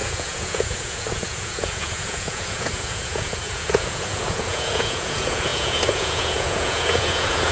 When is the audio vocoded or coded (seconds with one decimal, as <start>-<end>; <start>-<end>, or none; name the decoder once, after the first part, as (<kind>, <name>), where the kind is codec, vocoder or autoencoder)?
0.0-7.5 (vocoder, Vocos)

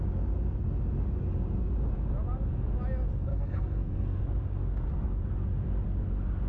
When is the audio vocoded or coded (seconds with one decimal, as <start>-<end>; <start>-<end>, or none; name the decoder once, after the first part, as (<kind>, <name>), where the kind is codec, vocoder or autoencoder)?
3.3-4.2 (codec, SNAC)

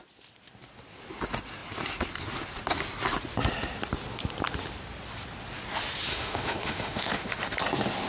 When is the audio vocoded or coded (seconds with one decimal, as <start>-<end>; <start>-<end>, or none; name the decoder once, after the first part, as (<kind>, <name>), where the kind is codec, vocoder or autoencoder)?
6.1-7.3 (autoencoder, DAC-VAE)

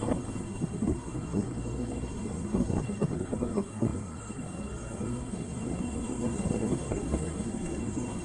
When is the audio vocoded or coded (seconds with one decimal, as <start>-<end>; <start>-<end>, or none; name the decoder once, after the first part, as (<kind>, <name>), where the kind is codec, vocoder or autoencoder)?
0.0-8.2 (codec, SNAC)

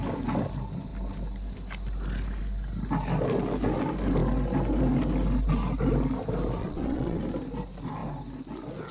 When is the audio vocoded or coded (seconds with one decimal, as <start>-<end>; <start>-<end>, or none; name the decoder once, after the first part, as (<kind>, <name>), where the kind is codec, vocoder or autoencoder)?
6.6-7.2 (vocoder, WaveNeXt)

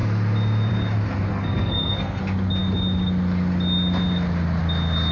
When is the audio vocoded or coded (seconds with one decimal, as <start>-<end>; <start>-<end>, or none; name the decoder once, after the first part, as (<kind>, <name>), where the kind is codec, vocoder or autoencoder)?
1.3-2.2 (codec, SNAC)

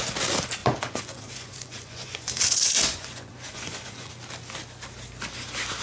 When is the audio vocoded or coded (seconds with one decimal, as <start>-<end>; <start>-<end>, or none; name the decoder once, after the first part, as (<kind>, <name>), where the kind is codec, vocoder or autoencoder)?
0.6-4.1 (vocoder, Vocos)